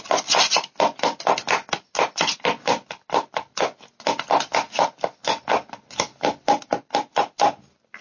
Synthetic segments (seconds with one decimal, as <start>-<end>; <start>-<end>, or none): none